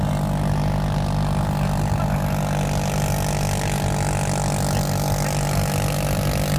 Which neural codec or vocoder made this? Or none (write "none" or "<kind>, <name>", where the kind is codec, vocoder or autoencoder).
none